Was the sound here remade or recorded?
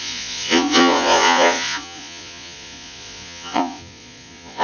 remade